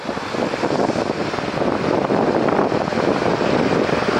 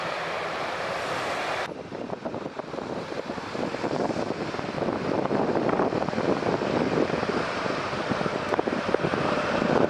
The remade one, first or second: second